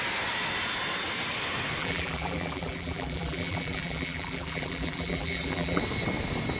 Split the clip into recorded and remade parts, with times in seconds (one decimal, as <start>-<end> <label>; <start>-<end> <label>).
0.0-1.8 recorded; 1.8-5.8 remade; 5.8-6.6 recorded